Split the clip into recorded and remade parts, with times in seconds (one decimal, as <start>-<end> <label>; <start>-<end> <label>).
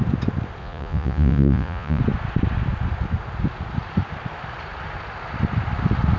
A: 0.0-0.6 recorded; 0.6-2.0 remade; 2.0-6.2 recorded